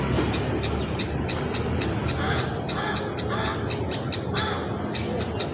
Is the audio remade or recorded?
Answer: recorded